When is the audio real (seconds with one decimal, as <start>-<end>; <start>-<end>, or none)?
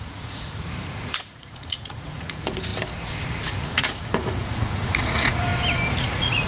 2.7-3.7; 5.5-6.0